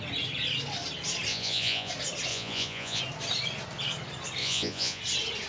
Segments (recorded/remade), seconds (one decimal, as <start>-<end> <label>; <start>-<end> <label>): 0.0-1.3 recorded; 1.3-1.9 remade; 1.9-2.3 recorded; 2.3-3.0 remade; 3.0-4.4 recorded; 4.4-5.0 remade; 5.0-5.5 recorded

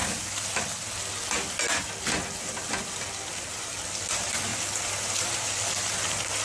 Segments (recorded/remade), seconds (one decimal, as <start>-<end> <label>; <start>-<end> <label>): 0.0-4.5 recorded; 4.5-5.3 remade; 5.3-6.4 recorded

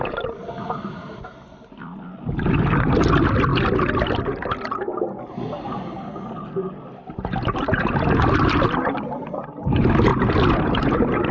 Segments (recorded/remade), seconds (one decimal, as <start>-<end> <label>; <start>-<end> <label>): 0.0-11.3 recorded